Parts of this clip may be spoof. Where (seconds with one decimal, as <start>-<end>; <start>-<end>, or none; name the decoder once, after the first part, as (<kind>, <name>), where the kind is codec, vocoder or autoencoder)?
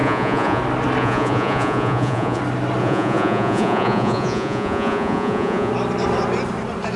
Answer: 0.0-0.6 (vocoder, Vocos); 1.0-2.4; 2.8-5.7